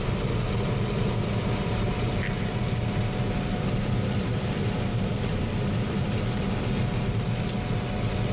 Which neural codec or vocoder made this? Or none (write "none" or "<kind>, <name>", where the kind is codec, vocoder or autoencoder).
vocoder, BigVGAN v2